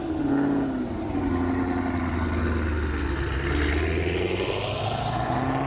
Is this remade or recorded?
recorded